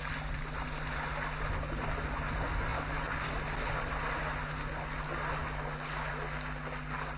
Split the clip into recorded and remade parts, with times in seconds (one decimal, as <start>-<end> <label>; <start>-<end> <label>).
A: 0.0-7.2 recorded